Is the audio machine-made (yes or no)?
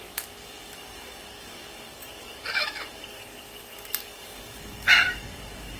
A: yes